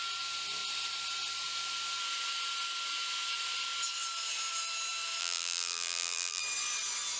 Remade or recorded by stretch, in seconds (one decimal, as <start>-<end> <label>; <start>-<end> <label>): 0.0-5.2 recorded; 5.2-6.4 remade; 6.4-7.2 recorded